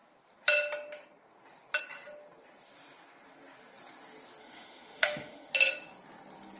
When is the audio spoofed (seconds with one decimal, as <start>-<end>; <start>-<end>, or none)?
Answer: 4.4-5.5